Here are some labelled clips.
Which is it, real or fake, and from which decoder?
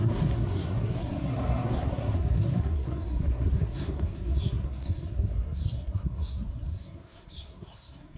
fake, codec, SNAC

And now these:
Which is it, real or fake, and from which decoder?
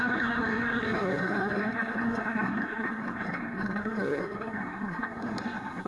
fake, codec, SNAC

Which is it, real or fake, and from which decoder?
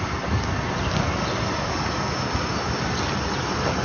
real